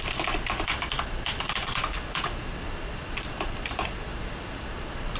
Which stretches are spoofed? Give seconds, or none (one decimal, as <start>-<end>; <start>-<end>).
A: 1.6-4.7